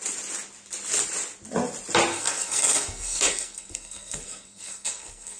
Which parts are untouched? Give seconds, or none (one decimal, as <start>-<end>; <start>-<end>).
0.0-2.1